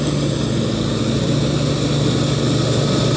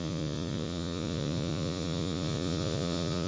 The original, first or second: first